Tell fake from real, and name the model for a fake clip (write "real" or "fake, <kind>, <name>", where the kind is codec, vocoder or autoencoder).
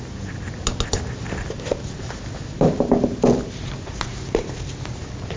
real